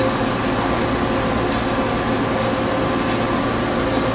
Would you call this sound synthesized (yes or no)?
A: no